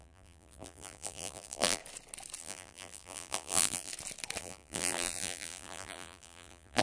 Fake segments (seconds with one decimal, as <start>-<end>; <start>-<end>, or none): 0.0-1.8; 2.4-3.9; 4.4-6.8